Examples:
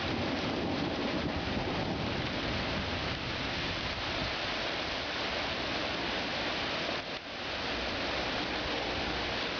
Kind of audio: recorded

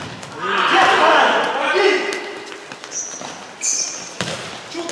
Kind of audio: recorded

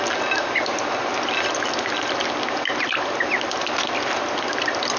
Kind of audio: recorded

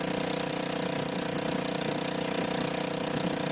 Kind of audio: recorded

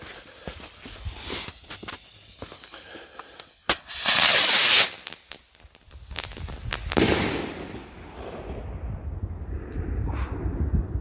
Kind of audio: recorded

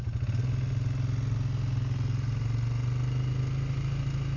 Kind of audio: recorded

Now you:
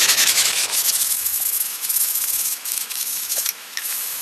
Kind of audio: remade